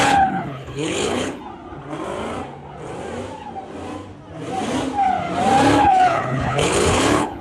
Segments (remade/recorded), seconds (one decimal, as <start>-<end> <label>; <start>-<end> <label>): 0.0-1.4 remade; 1.4-5.8 recorded; 5.8-7.4 remade